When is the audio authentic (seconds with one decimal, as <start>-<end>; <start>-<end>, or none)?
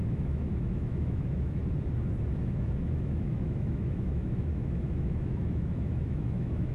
1.6-2.3